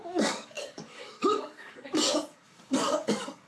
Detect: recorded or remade remade